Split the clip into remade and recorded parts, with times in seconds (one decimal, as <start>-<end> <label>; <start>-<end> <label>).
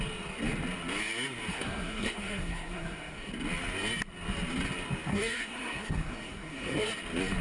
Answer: 0.0-1.5 recorded; 1.5-3.3 remade; 3.3-5.1 recorded; 5.1-6.9 remade; 6.9-7.4 recorded